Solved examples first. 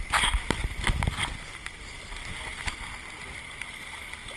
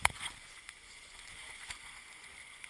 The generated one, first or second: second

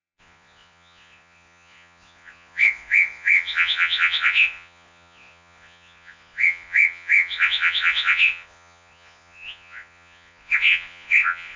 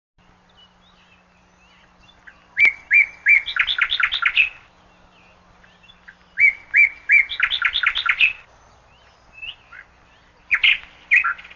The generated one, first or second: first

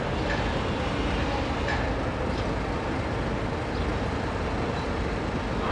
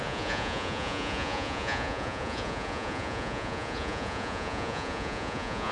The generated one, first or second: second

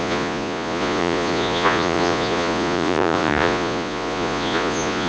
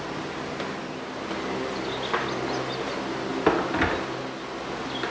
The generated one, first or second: first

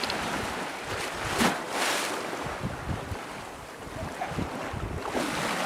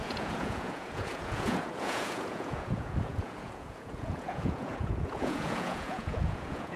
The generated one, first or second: second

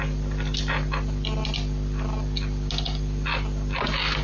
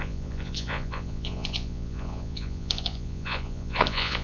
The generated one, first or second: second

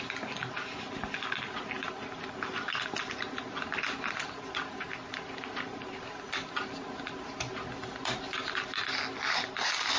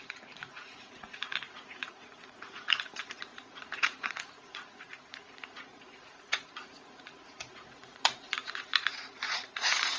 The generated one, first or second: second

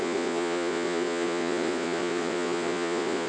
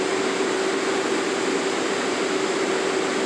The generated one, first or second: first